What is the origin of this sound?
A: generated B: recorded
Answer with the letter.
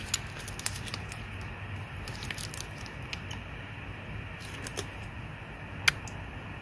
B